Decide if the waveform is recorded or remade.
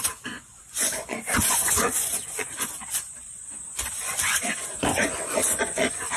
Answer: remade